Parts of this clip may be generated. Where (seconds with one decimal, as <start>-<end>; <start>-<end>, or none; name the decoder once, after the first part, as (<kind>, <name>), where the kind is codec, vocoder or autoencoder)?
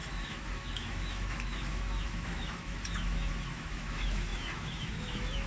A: 0.0-5.5 (autoencoder, DAC-VAE)